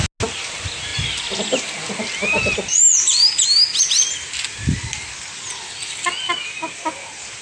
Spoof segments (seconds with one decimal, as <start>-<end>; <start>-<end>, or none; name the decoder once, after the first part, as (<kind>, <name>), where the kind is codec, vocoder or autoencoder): none